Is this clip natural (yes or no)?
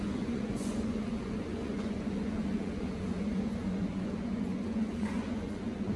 no